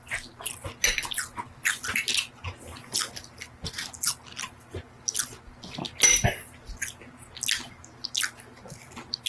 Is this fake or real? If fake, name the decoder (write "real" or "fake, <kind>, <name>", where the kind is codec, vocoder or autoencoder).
real